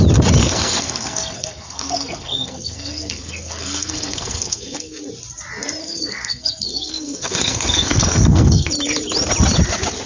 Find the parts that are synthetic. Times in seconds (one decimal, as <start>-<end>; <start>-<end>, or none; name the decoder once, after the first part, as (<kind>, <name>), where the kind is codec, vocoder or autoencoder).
0.4-5.0 (codec, SNAC); 5.8-8.7